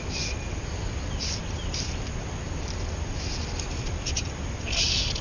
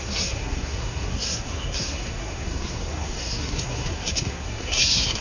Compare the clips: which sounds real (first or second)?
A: first